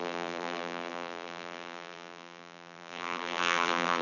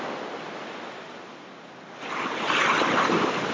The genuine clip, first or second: second